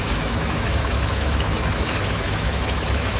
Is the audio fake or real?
fake